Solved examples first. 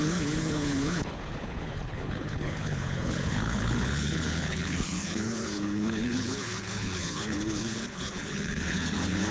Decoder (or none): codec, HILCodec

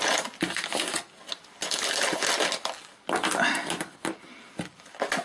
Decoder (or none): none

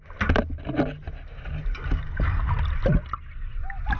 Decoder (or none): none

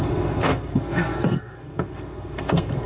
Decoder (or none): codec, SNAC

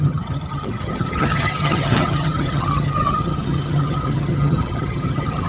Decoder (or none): vocoder, HiFi-GAN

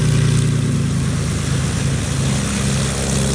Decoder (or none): none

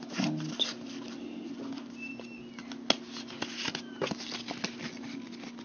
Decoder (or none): none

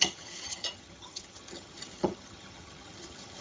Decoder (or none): vocoder, HiFi-GAN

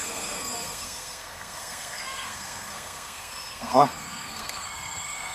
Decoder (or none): codec, SNAC